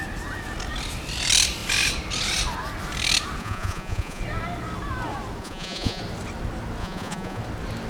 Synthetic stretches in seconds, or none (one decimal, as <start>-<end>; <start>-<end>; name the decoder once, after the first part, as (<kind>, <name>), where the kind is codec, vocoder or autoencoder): 3.4-4.2 (vocoder, Vocos); 5.4-6.0; 6.8-7.4